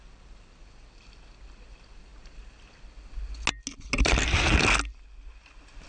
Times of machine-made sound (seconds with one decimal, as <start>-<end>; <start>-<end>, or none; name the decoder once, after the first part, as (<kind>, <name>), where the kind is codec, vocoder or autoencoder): none